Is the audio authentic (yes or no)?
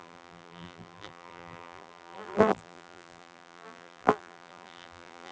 no